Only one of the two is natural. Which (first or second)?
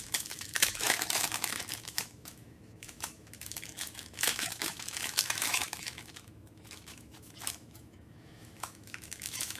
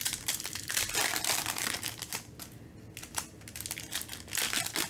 second